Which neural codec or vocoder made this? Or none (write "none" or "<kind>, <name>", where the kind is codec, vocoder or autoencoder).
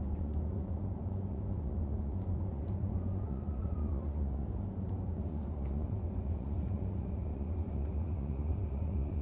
vocoder, Vocos